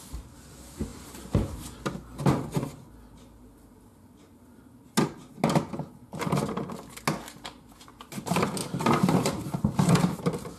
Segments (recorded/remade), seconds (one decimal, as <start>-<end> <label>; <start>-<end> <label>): 0.0-10.6 recorded